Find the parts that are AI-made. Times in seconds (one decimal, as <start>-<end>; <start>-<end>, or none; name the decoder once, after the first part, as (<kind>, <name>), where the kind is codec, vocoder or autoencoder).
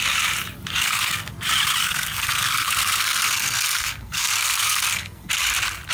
0.7-1.3 (codec, SNAC); 1.8-5.3